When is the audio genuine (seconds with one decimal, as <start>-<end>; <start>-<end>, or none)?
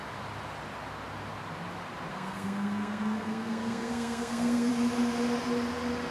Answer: 0.0-2.1; 4.7-6.1